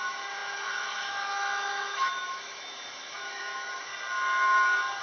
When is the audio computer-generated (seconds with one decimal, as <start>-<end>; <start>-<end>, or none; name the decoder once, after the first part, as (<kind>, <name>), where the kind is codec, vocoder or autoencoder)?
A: 0.0-3.9 (autoencoder, DAC-VAE)